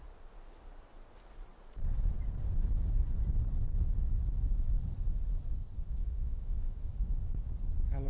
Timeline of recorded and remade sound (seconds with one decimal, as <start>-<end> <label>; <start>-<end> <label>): 0.0-6.0 recorded; 6.0-6.9 remade; 6.9-8.1 recorded